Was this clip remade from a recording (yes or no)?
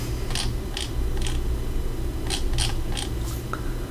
no